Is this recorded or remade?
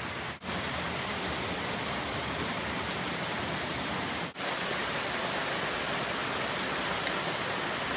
recorded